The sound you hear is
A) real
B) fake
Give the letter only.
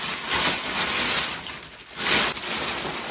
A